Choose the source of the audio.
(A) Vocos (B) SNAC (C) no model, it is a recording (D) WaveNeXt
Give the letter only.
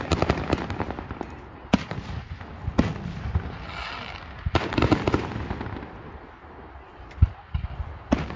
C